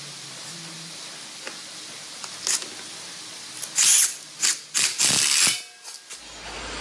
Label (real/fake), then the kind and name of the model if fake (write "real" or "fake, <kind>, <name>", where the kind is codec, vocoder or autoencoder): real